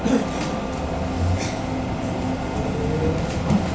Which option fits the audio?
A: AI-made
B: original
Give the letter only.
B